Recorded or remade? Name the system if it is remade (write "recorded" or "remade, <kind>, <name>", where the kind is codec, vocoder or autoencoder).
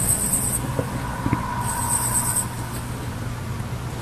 recorded